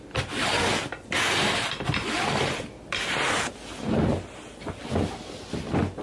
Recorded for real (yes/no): yes